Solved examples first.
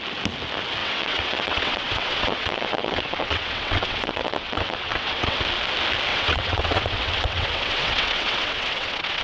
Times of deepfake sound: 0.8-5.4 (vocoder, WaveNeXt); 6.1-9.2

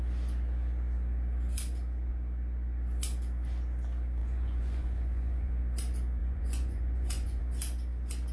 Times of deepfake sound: 4.2-5.5 (vocoder, Vocos); 6.2-7.4

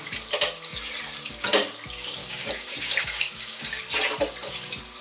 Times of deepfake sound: 2.2-3.8 (codec, DAC)

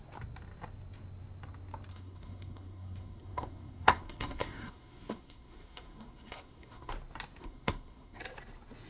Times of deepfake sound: 1.9-6.9 (codec, SNAC); 7.4-8.2

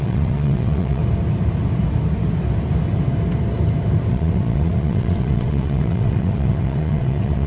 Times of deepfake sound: 0.0-1.0 (vocoder, WaveNeXt); 4.1-7.5

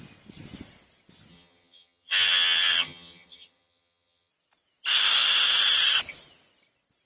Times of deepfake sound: 1.3-4.3 (vocoder, HiFi-GAN)

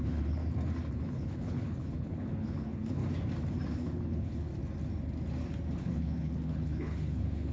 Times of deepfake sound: 0.0-0.4 (codec, HILCodec); 0.9-3.0; 3.7-4.5; 5.8-7.5